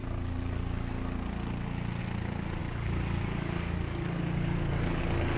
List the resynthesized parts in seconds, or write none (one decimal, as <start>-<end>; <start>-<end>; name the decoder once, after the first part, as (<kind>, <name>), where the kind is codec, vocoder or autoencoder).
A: 2.6-5.0 (codec, DAC)